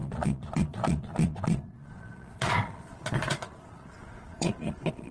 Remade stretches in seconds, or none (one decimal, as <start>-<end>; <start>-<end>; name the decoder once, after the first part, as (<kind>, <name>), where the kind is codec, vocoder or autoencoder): 0.0-5.1 (vocoder, Vocos)